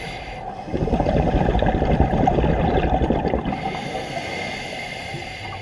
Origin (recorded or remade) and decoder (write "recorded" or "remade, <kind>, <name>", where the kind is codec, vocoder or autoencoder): recorded